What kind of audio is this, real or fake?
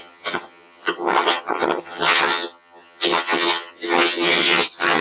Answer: fake